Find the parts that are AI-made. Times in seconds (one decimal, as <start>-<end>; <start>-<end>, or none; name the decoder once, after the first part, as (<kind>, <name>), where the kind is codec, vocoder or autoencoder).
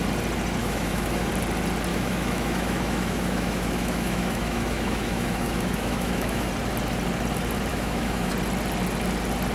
0.6-1.3 (autoencoder, DAC-VAE); 1.9-6.5; 7.7-8.3